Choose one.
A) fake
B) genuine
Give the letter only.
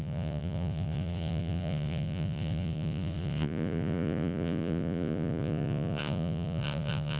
A